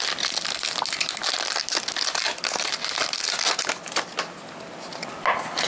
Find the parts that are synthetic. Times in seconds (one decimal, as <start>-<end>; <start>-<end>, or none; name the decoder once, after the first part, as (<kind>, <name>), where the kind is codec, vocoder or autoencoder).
none